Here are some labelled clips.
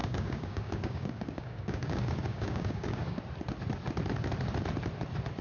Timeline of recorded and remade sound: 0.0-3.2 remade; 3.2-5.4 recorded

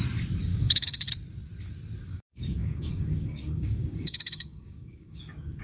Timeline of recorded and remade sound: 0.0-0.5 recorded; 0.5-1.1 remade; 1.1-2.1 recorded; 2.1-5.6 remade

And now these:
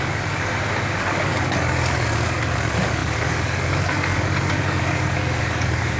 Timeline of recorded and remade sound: 0.0-0.5 remade; 0.5-1.0 recorded; 1.0-6.0 remade